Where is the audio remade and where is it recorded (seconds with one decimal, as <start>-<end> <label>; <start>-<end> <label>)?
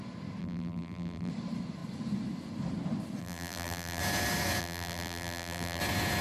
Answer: 0.0-0.4 recorded; 0.4-1.3 remade; 1.3-3.2 recorded; 3.2-4.0 remade; 4.0-4.6 recorded; 4.6-5.8 remade; 5.8-6.2 recorded